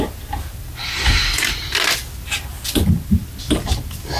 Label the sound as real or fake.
real